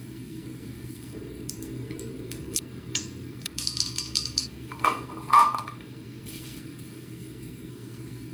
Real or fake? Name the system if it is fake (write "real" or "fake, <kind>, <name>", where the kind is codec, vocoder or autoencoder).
fake, codec, SNAC